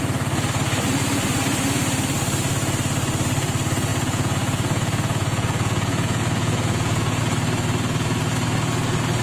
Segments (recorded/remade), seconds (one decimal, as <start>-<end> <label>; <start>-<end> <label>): 0.0-3.9 recorded; 3.9-7.2 remade; 7.2-9.2 recorded